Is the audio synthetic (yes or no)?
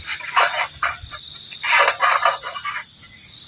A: no